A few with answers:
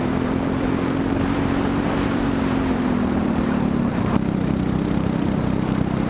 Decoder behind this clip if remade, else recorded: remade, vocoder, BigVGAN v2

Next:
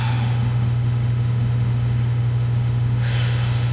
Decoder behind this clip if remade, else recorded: remade, autoencoder, DAC-VAE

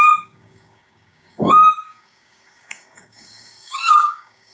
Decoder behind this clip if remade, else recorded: remade, codec, DAC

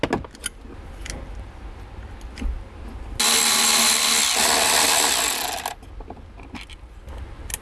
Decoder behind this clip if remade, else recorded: recorded